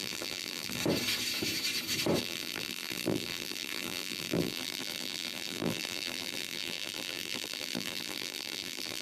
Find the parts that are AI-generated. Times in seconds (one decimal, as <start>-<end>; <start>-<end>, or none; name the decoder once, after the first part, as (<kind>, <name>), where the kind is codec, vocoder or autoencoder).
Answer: 0.0-0.8 (vocoder, BigVGAN v2); 2.2-9.0